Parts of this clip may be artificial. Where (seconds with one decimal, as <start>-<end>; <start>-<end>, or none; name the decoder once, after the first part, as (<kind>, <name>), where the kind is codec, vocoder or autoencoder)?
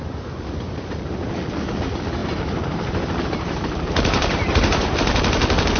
2.2-5.8 (vocoder, BigVGAN v2)